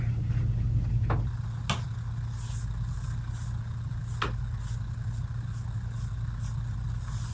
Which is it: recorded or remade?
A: recorded